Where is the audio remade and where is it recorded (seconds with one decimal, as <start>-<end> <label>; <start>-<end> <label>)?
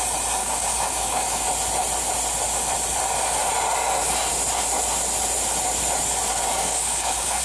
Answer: 0.0-0.4 recorded; 0.4-1.5 remade; 1.5-6.3 recorded; 6.3-7.4 remade